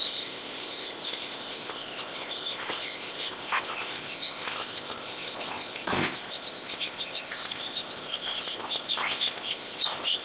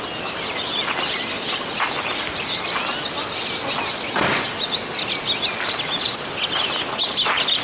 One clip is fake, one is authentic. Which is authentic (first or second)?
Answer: second